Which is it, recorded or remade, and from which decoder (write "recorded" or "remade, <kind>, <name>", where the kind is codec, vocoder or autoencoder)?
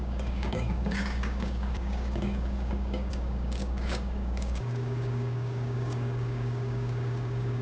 remade, codec, DAC